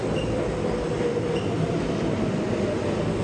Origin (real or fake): real